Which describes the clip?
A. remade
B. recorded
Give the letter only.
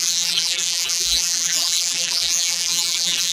A